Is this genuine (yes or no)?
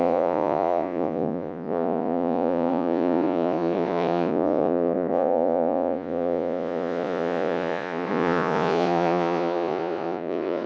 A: no